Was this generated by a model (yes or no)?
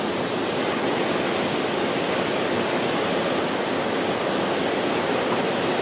no